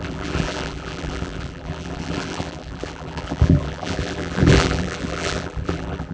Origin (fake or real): fake